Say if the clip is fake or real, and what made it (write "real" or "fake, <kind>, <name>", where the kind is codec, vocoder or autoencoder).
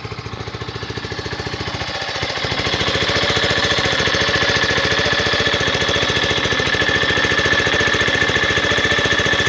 real